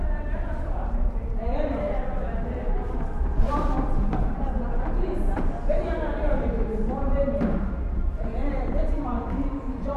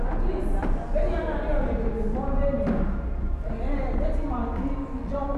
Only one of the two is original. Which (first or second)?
second